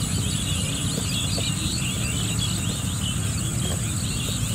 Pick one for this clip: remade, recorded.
recorded